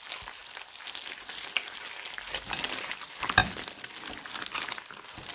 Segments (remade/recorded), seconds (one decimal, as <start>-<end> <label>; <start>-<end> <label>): 0.0-5.3 recorded